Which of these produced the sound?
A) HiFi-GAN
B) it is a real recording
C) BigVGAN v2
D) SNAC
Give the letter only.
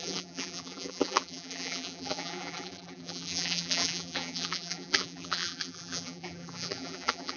C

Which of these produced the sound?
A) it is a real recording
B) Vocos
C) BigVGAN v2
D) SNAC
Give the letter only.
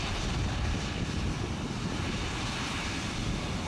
A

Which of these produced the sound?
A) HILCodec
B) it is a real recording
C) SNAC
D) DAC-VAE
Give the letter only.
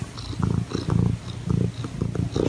B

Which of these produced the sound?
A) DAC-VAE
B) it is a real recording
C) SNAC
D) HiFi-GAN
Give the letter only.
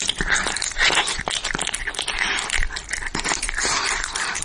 B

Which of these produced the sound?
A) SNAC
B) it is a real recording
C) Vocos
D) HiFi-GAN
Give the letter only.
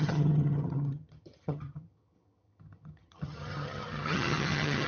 D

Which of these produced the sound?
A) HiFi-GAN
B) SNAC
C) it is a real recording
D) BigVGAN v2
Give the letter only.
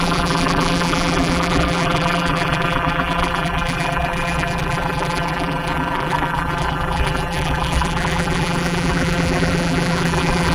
D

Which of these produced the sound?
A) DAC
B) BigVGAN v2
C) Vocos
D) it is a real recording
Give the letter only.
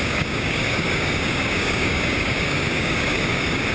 A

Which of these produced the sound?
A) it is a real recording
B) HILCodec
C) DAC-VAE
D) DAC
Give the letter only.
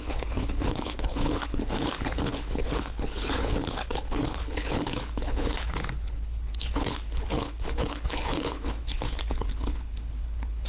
B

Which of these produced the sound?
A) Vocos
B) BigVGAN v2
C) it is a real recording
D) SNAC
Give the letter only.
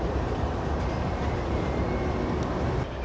C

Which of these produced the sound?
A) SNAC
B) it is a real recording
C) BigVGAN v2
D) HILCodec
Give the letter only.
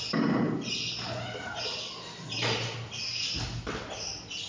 B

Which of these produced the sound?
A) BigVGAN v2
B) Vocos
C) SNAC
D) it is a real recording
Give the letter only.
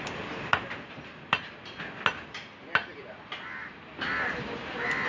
D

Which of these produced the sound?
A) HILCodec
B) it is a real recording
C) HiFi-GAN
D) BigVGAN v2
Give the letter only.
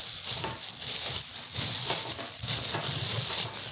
B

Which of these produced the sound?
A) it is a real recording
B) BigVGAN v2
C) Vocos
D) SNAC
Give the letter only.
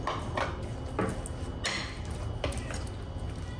A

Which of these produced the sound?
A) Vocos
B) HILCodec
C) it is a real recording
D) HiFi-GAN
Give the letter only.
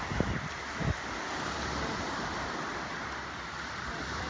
C